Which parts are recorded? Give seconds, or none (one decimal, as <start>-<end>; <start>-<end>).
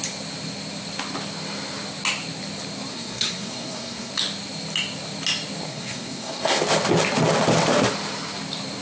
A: 0.0-2.9; 4.1-5.7; 6.6-8.8